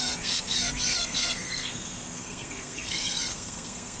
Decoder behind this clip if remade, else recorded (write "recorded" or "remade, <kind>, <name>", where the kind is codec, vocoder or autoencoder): remade, codec, SNAC